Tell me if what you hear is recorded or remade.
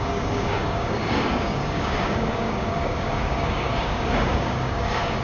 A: remade